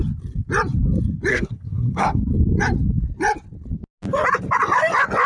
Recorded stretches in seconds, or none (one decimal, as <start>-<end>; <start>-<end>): 0.0-1.3; 2.2-5.3

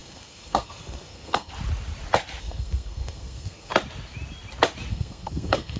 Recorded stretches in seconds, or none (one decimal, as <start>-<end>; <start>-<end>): 1.5-2.4; 3.7-4.9

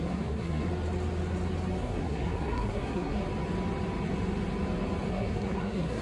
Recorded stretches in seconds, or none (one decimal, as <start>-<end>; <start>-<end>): 0.7-1.8; 3.2-5.1